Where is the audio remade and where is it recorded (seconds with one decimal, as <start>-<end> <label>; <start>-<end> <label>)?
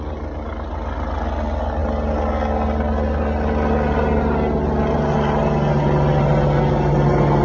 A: 0.0-7.4 recorded